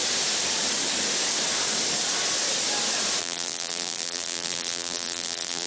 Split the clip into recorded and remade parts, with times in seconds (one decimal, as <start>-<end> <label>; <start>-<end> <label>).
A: 0.0-3.2 recorded; 3.2-5.7 remade